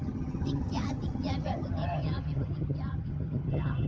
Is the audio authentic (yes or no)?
no